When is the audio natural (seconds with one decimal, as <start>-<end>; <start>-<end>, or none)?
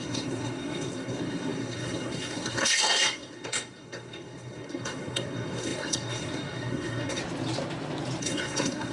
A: 7.2-8.2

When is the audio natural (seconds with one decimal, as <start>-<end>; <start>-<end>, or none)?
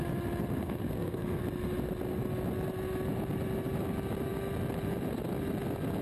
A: 0.0-0.6; 1.4-6.0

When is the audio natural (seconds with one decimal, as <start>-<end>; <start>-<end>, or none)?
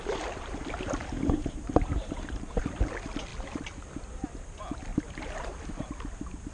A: 0.0-1.0; 2.6-4.9; 5.7-6.5